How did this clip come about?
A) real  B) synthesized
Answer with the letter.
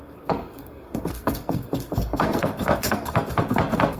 B